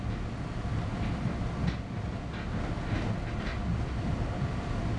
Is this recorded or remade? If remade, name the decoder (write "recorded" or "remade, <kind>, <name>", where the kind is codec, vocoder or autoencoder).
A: recorded